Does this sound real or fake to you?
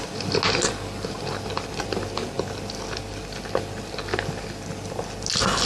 real